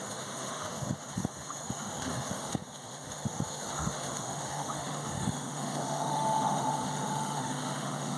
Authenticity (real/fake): fake